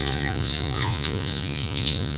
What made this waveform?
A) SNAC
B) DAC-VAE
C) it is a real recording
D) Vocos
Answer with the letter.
D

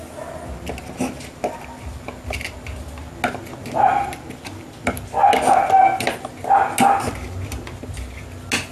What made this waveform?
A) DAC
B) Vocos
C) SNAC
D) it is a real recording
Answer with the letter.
D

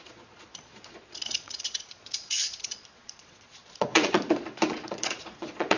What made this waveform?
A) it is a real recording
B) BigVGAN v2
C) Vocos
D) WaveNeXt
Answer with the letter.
C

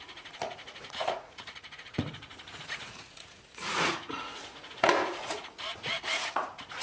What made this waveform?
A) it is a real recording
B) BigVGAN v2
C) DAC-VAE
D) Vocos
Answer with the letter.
D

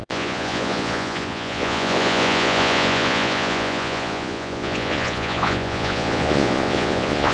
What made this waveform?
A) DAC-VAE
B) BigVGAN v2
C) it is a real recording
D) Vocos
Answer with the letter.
D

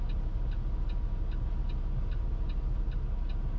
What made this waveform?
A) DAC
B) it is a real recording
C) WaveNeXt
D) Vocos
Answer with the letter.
B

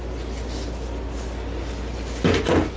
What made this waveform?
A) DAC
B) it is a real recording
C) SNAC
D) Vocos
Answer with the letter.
B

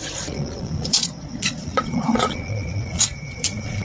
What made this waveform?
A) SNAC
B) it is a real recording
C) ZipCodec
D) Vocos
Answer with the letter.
D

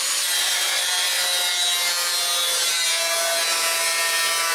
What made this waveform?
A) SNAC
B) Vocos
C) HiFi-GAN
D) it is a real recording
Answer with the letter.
D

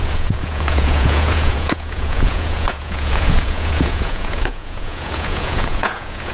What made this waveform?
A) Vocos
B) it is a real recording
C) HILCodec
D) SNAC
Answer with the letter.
A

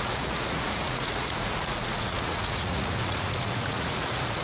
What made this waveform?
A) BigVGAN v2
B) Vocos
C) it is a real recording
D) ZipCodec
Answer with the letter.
B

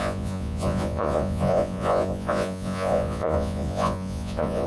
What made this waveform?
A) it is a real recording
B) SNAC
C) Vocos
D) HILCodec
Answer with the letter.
C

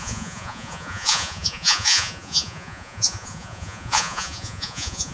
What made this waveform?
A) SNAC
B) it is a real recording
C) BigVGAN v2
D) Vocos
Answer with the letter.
D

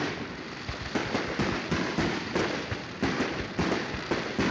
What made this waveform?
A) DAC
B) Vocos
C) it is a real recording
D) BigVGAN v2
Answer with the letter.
C